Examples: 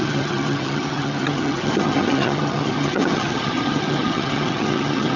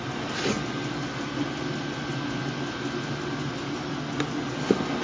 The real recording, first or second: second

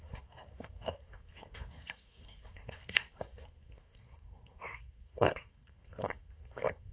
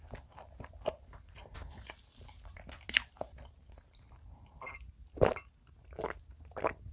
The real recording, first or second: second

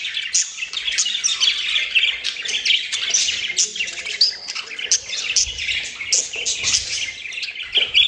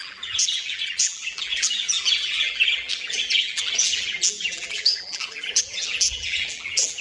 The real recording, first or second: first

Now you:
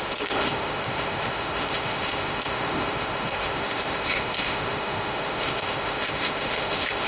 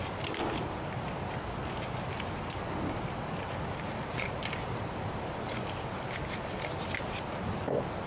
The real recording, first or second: second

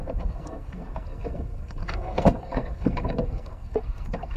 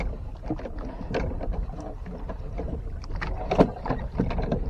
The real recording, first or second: second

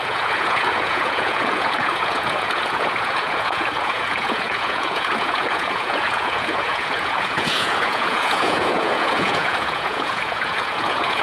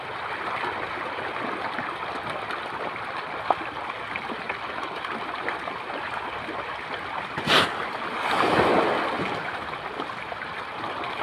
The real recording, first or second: second